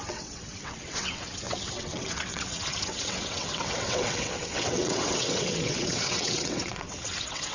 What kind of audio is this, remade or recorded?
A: remade